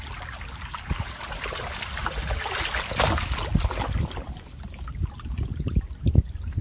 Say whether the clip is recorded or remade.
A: recorded